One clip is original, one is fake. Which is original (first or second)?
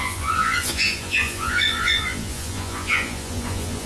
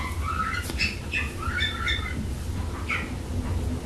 second